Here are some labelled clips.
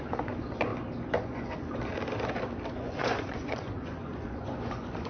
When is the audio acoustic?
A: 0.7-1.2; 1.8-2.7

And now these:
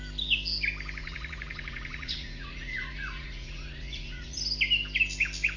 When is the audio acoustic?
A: 0.0-1.0; 4.4-5.6

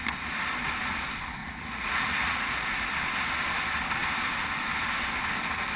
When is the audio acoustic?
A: 0.0-1.4; 2.9-5.8

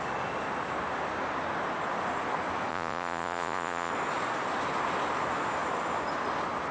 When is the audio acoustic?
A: 0.0-2.7; 3.9-6.7

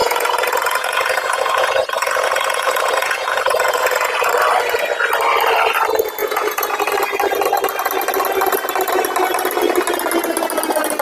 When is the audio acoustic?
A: 4.3-6.2; 6.8-11.0

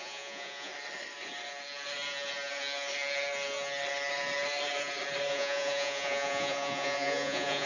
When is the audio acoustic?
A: 0.7-5.3

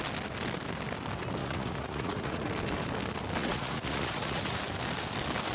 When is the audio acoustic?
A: 0.0-1.4; 2.5-3.4; 4.6-5.5